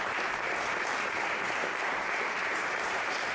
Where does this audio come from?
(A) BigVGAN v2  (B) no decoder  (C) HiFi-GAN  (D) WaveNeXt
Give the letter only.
A